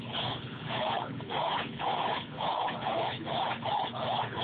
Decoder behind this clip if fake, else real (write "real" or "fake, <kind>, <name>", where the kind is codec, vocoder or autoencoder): fake, codec, HILCodec